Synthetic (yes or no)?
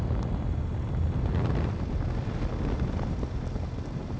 no